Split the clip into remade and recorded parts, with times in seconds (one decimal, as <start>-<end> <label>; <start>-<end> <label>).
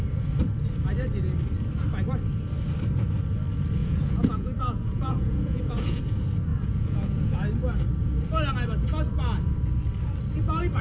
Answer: 0.0-3.8 recorded; 3.8-6.0 remade; 6.0-6.5 recorded; 6.5-7.5 remade; 7.5-10.8 recorded